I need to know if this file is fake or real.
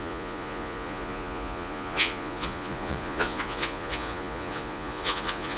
fake